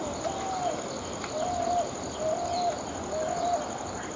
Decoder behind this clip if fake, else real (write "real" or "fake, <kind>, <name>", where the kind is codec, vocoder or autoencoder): real